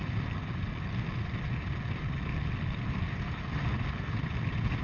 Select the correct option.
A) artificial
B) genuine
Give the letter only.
B